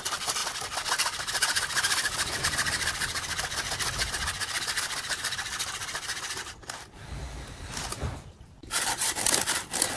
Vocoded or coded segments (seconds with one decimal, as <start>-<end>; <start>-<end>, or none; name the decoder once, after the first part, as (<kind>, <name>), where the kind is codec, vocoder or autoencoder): none